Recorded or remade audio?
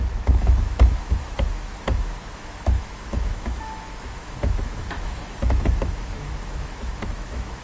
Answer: remade